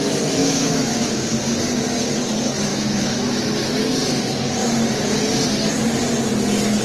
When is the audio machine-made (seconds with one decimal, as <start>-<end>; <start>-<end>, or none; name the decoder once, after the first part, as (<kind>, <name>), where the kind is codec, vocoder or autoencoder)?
0.4-1.1 (autoencoder, DAC-VAE); 2.7-3.4

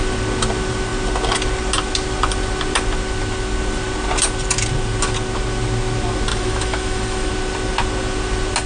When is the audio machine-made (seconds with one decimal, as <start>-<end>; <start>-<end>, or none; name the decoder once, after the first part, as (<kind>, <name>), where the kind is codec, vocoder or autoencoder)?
6.3-7.3 (autoencoder, DAC-VAE)

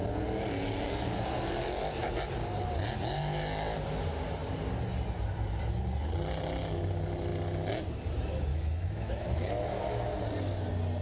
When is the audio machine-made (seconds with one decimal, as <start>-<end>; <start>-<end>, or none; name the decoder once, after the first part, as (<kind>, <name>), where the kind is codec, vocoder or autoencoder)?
8.5-10.1 (autoencoder, DAC-VAE)

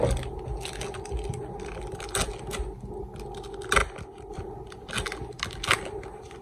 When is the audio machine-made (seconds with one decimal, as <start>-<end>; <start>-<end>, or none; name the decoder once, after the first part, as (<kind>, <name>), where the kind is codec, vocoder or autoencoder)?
none

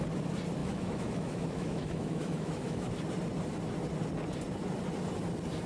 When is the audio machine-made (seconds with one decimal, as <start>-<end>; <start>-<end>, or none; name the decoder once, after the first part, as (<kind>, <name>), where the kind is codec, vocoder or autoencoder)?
0.6-3.0 (autoencoder, DAC-VAE)

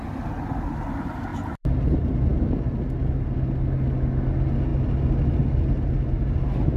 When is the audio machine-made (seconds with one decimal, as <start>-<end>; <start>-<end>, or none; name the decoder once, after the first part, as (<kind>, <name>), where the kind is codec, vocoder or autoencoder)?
none

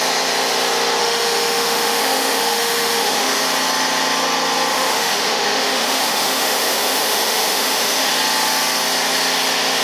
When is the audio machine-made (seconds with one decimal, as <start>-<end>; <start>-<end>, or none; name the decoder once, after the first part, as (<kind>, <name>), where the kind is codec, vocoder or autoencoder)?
1.0-3.4 (autoencoder, DAC-VAE); 4.7-8.1

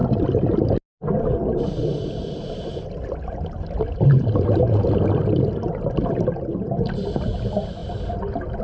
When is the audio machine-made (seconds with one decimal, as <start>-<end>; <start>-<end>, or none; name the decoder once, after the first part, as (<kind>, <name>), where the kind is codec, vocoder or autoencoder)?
none